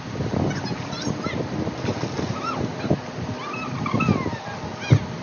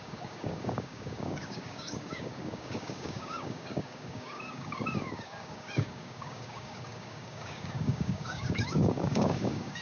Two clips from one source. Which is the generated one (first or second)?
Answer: second